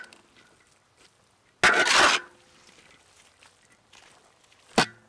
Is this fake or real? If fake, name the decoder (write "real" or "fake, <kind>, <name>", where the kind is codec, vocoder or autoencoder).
real